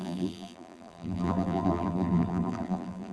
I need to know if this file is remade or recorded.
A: remade